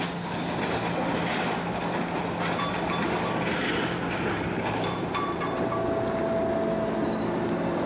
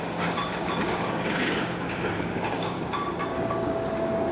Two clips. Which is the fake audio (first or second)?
second